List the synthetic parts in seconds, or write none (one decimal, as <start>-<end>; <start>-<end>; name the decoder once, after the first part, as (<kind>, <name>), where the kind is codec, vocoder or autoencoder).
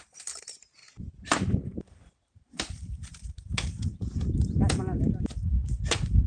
none